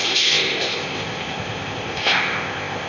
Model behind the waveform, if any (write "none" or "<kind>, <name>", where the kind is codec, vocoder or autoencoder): codec, ZipCodec